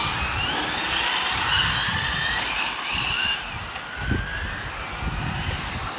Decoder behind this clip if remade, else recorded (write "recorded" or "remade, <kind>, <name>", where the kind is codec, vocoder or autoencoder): recorded